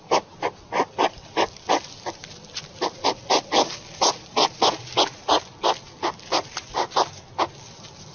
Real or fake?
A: real